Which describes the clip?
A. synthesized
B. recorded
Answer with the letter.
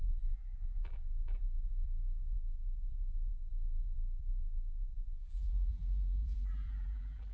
A